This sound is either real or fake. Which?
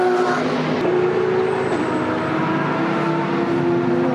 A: real